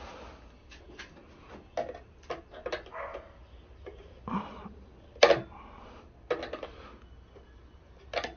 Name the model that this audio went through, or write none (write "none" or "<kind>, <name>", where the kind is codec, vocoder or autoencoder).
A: none